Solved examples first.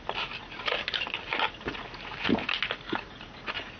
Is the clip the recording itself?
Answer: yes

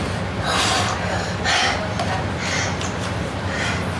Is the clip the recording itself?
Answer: yes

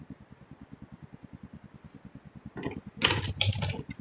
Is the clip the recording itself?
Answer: yes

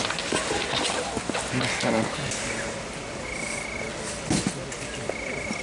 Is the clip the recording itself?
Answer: yes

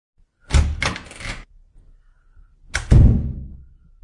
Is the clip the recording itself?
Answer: yes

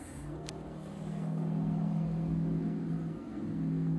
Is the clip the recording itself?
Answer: no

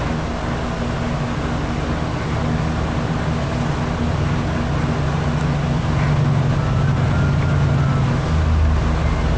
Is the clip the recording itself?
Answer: yes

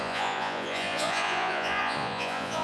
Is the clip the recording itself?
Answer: no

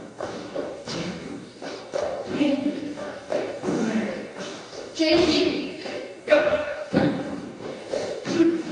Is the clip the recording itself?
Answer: no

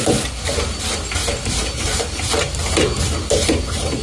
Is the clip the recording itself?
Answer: yes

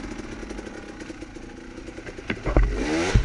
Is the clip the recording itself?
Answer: yes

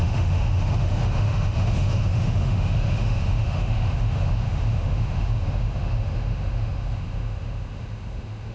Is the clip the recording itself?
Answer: no